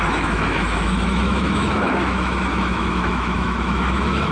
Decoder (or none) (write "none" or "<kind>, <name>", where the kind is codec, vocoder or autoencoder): autoencoder, DAC-VAE